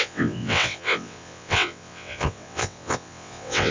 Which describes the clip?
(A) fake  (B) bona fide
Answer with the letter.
A